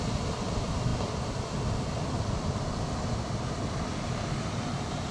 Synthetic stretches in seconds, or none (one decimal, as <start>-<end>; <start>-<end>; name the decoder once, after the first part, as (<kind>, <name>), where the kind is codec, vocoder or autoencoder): 0.0-0.9 (vocoder, BigVGAN v2); 4.0-5.1